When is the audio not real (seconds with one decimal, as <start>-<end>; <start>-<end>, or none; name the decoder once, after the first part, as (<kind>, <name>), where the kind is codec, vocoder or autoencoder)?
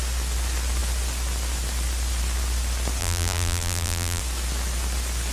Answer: 3.0-4.2 (vocoder, BigVGAN v2)